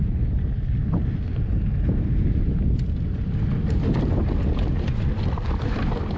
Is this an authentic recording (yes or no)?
yes